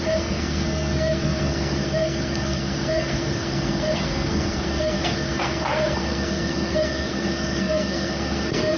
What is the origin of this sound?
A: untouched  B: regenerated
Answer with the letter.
B